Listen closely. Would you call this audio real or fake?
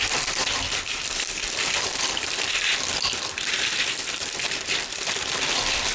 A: fake